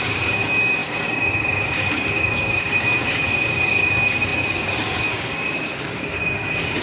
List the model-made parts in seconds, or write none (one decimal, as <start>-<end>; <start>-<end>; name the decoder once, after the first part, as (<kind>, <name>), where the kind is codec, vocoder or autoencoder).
0.0-6.8 (codec, DAC)